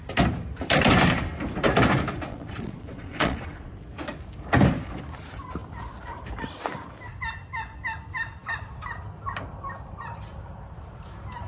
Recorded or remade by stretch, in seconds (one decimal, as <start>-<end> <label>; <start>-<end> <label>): 0.0-2.3 recorded; 2.3-3.7 remade; 3.7-11.5 recorded